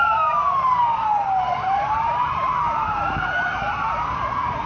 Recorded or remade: recorded